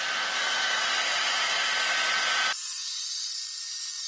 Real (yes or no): yes